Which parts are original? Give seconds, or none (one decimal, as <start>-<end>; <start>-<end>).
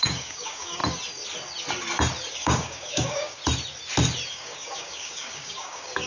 0.8-2.3; 3.4-4.3